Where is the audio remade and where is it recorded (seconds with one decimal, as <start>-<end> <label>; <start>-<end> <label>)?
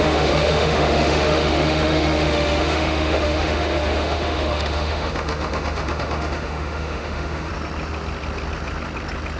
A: 0.0-7.5 remade; 7.5-9.4 recorded